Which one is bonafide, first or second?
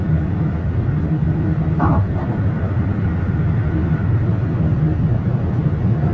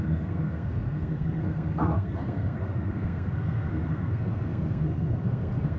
first